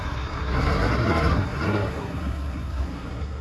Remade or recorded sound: remade